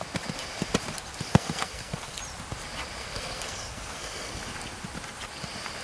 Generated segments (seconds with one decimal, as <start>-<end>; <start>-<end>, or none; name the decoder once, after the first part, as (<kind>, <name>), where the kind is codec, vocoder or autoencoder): 1.3-2.2 (codec, SNAC); 3.0-4.3